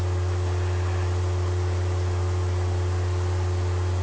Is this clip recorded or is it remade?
recorded